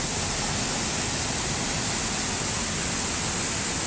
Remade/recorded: recorded